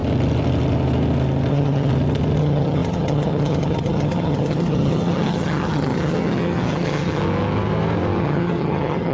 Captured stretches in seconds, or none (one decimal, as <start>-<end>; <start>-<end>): 0.0-1.5; 1.9-2.4; 7.2-8.2